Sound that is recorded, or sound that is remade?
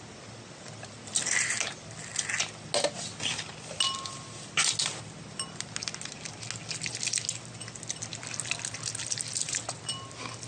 recorded